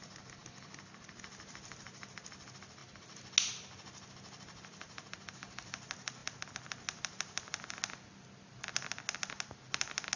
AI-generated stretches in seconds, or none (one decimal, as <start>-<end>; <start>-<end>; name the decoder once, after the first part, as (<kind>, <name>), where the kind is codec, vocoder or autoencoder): none